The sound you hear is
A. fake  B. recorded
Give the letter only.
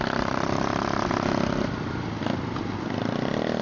B